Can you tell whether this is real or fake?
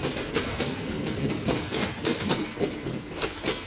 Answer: fake